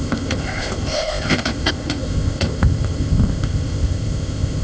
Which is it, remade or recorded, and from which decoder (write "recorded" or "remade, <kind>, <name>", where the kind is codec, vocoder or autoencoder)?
remade, codec, ZipCodec